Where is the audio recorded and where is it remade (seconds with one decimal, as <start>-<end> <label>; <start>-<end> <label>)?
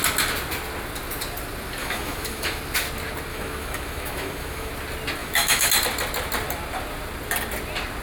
0.0-1.8 recorded; 1.8-2.6 remade; 2.6-3.3 recorded; 3.3-4.7 remade; 4.7-5.2 recorded; 5.2-5.7 remade; 5.7-8.0 recorded